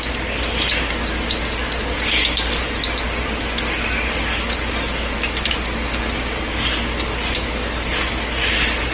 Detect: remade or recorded recorded